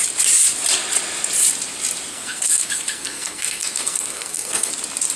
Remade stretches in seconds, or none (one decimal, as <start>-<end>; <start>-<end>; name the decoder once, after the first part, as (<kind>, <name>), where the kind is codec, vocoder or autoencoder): 2.1-4.7 (codec, SNAC)